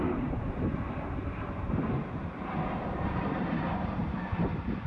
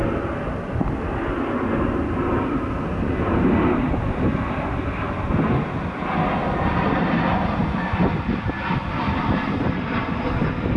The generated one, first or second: first